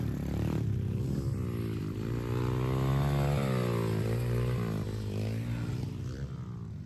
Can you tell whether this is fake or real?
real